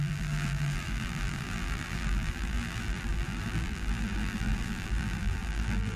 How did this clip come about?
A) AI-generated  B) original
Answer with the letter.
A